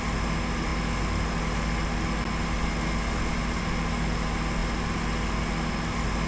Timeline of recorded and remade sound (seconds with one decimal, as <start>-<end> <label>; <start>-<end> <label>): 0.0-6.3 recorded